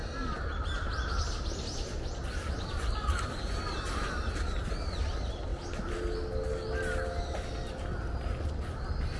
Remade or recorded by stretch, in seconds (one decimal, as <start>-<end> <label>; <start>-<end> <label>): 0.0-9.2 recorded